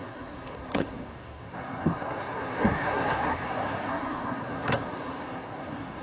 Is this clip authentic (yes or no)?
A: no